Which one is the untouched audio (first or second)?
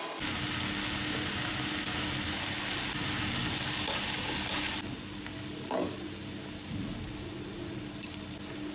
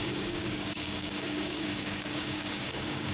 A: first